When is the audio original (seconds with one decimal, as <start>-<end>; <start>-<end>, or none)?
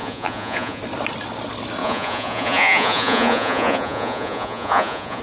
0.8-1.8